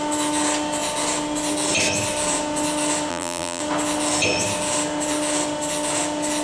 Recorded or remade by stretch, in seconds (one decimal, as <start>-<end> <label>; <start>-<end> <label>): 0.0-3.1 recorded; 3.1-3.6 remade; 3.6-6.4 recorded